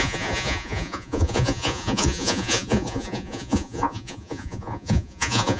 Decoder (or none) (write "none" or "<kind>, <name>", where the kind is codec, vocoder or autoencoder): vocoder, Vocos